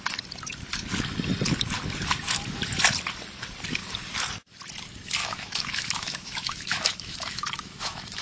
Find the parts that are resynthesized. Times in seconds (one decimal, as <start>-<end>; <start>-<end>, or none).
5.2-8.2